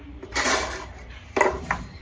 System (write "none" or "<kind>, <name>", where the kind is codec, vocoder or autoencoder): vocoder, BigVGAN v2